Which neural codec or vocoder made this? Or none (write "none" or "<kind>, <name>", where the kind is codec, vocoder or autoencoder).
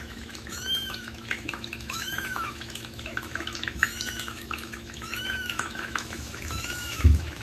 autoencoder, DAC-VAE